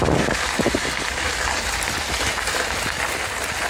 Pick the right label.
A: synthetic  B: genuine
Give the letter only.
B